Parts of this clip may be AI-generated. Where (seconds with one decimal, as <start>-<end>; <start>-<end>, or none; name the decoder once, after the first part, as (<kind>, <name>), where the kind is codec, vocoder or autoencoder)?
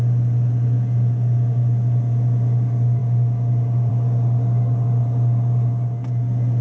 none